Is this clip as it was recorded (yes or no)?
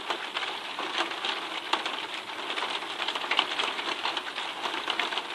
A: yes